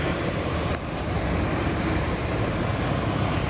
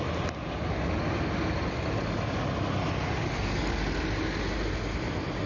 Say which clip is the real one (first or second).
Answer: second